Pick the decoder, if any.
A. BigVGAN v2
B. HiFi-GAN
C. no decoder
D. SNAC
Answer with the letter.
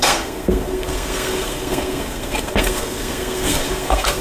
D